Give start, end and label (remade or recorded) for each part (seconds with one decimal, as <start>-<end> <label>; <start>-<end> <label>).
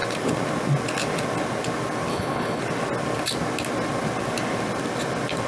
0.0-2.1 recorded; 2.1-2.6 remade; 2.6-5.5 recorded